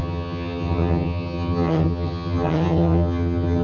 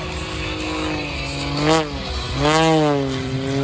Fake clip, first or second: first